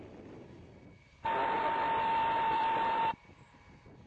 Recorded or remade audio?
recorded